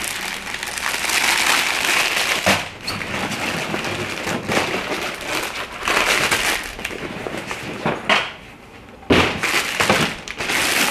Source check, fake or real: real